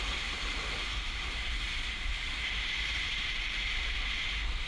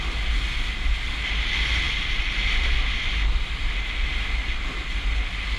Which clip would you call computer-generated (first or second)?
first